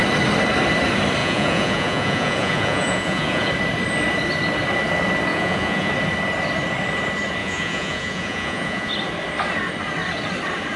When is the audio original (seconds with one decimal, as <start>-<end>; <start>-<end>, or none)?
0.0-1.2; 3.5-5.3; 5.9-7.4; 8.9-10.8